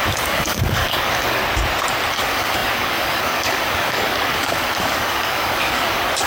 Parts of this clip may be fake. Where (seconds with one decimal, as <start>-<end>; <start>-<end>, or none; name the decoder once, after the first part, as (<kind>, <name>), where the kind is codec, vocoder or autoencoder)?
0.0-1.4 (codec, DAC); 2.1-6.3